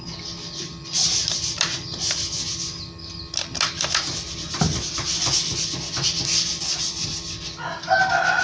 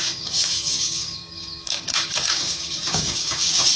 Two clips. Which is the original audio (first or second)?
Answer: first